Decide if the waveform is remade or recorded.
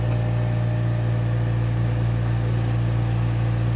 recorded